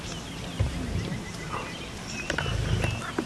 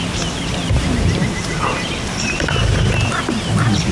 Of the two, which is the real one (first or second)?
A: first